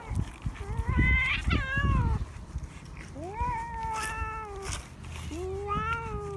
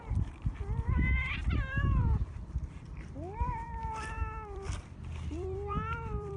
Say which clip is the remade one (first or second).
second